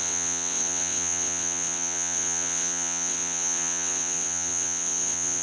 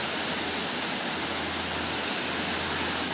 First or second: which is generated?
first